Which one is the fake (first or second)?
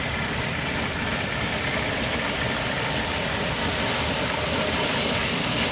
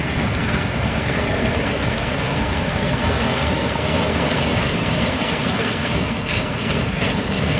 second